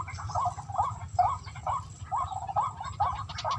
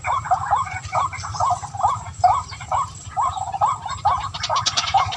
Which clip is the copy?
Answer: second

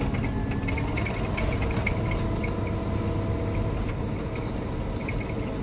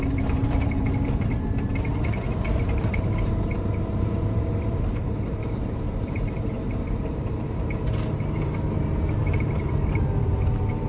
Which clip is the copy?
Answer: second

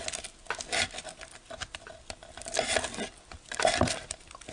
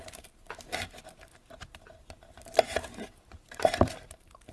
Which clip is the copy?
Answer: second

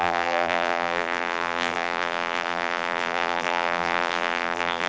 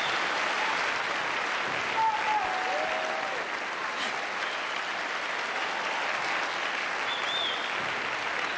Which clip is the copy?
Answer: first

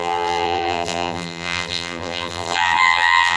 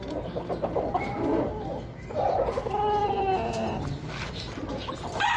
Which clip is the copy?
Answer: first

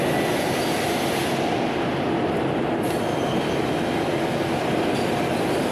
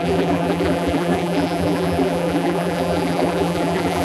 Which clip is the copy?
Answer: second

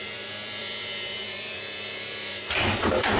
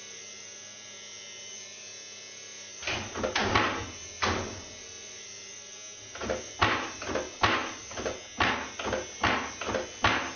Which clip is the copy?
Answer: first